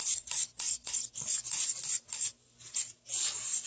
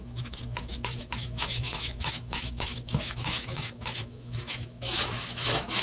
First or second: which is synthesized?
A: second